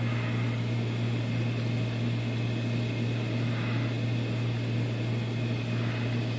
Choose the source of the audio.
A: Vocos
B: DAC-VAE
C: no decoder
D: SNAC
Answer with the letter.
C